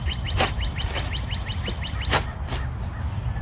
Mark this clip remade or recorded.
recorded